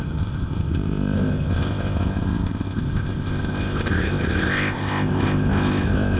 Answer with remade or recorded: remade